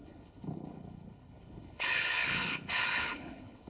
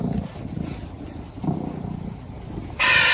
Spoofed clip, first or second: first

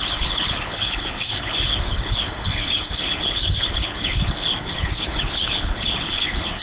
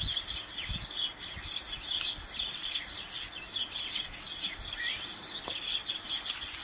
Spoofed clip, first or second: first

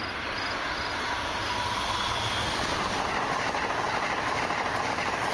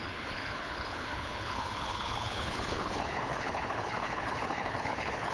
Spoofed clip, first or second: second